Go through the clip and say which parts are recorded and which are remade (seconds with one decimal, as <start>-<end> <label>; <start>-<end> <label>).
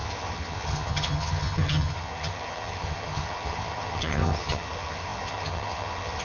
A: 0.0-6.2 remade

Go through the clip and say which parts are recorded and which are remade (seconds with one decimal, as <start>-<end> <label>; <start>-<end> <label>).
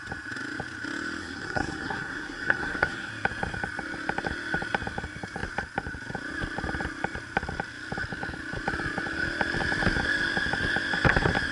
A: 0.0-1.2 recorded; 1.2-3.1 remade; 3.1-11.5 recorded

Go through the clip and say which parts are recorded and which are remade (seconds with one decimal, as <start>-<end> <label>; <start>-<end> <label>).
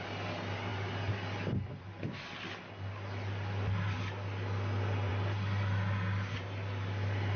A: 0.0-7.4 recorded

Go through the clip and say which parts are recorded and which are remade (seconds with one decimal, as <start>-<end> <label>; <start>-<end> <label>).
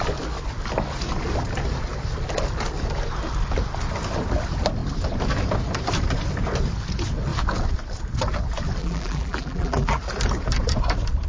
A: 0.0-8.8 recorded; 8.8-10.0 remade; 10.0-11.3 recorded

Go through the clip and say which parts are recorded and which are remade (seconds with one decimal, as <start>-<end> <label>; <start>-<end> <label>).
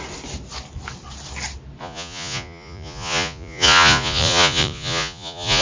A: 0.0-1.8 recorded; 1.8-5.6 remade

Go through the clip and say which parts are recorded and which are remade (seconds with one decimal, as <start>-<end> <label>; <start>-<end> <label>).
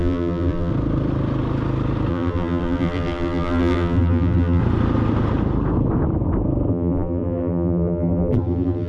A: 0.0-0.7 remade; 0.7-2.1 recorded; 2.1-4.6 remade; 4.6-6.7 recorded; 6.7-8.9 remade